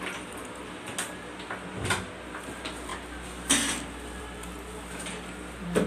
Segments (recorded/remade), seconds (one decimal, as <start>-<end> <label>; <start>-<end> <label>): 0.0-5.9 recorded

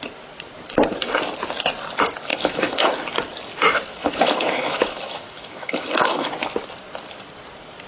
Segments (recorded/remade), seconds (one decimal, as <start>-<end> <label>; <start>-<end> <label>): 0.0-2.3 recorded; 2.3-2.9 remade; 2.9-3.9 recorded; 3.9-6.3 remade; 6.3-7.9 recorded